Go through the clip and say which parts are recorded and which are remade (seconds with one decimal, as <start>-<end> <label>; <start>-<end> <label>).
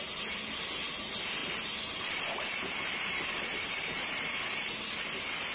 0.0-1.4 recorded; 1.4-2.5 remade; 2.5-3.5 recorded; 3.5-4.3 remade; 4.3-5.5 recorded